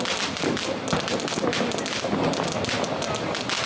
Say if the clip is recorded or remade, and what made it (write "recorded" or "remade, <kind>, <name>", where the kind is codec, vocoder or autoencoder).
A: recorded